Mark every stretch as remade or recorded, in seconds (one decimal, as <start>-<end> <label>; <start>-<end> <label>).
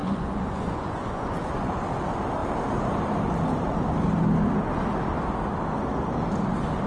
0.0-1.8 remade; 1.8-6.9 recorded